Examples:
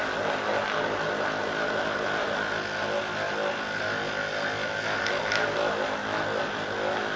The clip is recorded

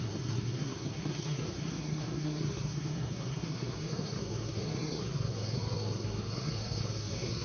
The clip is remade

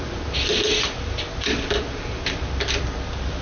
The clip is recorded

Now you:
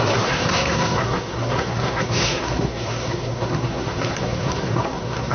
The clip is remade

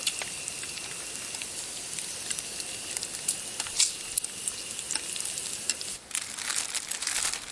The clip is recorded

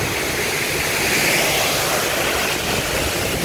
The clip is recorded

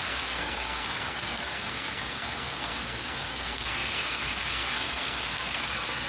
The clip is remade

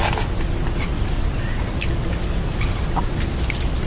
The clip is recorded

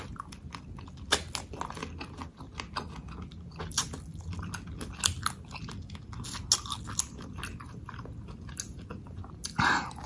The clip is recorded